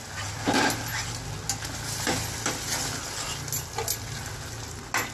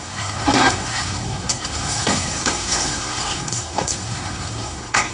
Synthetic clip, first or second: second